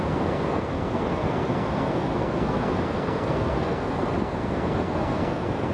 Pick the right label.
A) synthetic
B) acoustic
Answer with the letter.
A